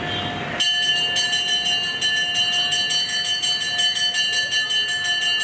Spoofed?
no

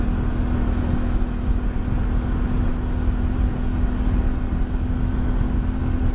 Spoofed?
no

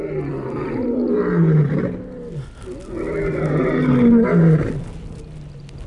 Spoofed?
no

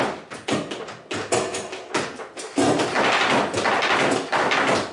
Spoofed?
no